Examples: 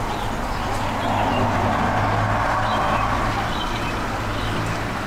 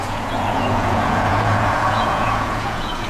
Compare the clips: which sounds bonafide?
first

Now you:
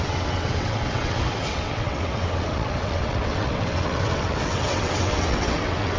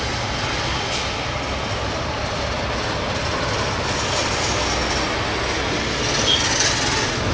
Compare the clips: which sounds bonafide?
second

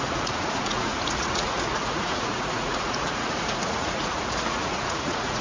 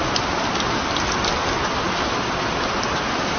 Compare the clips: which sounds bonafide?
second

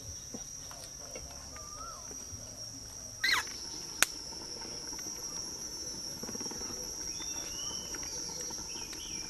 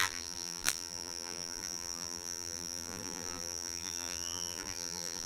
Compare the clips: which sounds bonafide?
first